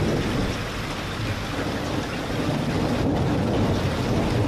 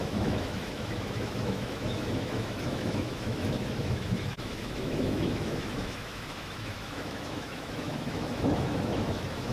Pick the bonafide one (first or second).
first